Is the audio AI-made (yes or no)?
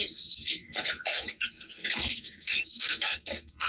yes